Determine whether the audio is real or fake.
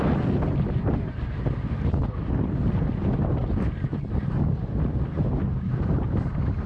real